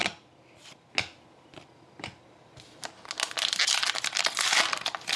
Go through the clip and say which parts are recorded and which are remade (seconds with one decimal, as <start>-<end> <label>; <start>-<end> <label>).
0.0-5.2 recorded